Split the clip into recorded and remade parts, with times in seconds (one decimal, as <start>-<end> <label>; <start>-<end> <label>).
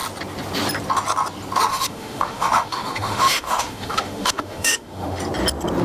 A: 0.0-1.7 recorded; 1.7-5.2 remade; 5.2-5.8 recorded